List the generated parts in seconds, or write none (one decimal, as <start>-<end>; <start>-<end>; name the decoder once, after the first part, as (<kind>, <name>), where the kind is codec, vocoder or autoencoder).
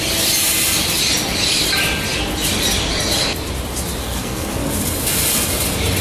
4.0-4.6 (codec, SNAC)